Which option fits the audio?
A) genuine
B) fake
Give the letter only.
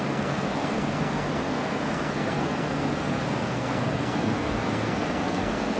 B